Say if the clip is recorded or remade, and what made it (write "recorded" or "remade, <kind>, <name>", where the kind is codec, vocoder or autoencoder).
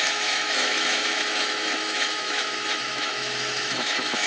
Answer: remade, autoencoder, DAC-VAE